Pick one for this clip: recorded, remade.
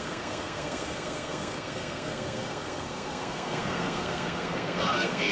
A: remade